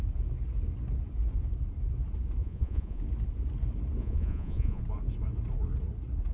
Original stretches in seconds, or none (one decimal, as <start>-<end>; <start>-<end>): 0.0-2.4; 3.0-4.0; 4.8-6.3